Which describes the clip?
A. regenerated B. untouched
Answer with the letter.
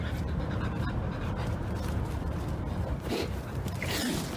B